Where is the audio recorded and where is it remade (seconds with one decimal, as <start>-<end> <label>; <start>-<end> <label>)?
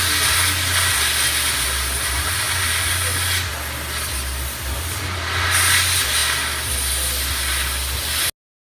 0.0-8.7 recorded